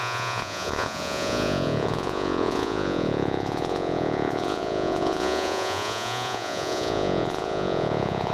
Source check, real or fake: fake